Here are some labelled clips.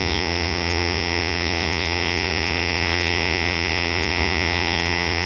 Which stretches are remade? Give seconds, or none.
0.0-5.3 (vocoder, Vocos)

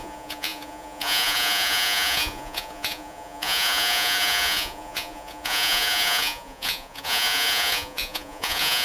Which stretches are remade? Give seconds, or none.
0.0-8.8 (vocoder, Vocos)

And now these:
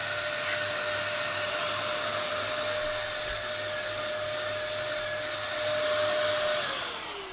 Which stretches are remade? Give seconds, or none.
none

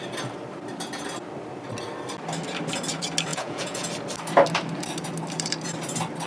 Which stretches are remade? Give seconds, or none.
3.3-3.9 (vocoder, Vocos)

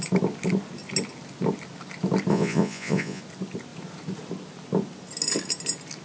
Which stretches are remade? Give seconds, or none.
2.3-3.2 (vocoder, Vocos)